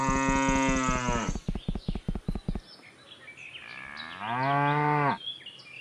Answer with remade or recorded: recorded